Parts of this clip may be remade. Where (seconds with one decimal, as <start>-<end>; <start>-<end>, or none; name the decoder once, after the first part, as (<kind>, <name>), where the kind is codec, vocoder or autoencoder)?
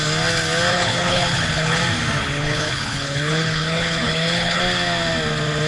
0.7-1.8 (codec, HILCodec); 2.2-4.6